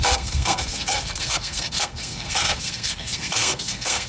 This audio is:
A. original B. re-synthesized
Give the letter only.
B